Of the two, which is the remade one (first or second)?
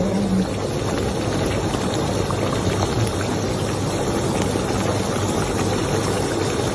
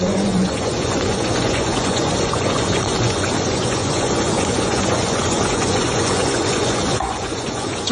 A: second